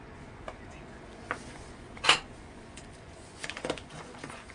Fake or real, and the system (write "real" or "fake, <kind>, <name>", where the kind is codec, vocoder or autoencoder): fake, vocoder, Vocos